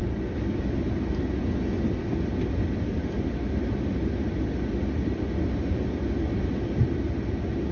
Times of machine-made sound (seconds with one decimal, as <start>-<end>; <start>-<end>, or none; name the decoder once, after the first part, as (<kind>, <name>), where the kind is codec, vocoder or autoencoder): none